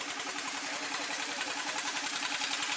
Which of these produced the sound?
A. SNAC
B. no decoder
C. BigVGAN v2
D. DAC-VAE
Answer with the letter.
C